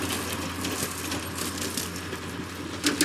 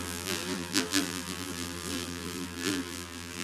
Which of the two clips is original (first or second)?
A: first